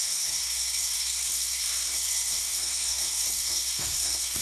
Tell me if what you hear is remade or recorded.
remade